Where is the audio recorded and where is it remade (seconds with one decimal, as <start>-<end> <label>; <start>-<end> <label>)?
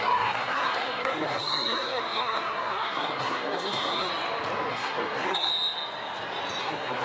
0.0-4.1 remade; 4.1-4.7 recorded; 4.7-5.5 remade; 5.5-6.6 recorded; 6.6-7.0 remade